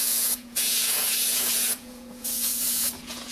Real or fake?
fake